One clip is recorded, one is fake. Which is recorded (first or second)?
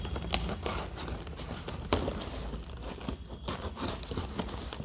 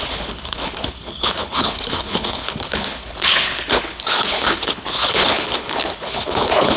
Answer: first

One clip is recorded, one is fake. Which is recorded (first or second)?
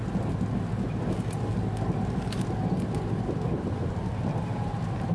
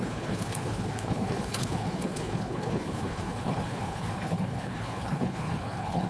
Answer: first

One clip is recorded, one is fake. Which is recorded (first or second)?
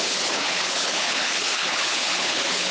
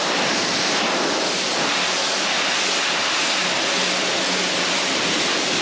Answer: second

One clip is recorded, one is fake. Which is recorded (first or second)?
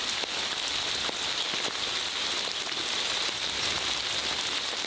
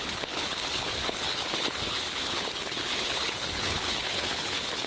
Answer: first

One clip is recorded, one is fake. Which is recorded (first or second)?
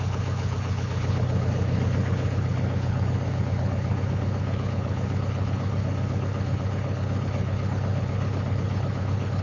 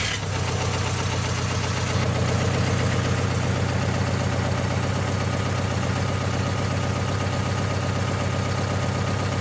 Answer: second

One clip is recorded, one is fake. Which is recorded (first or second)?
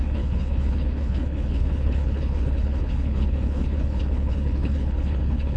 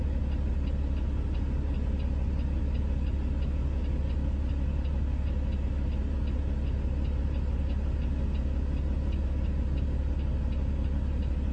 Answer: second